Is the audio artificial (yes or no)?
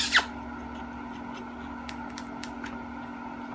no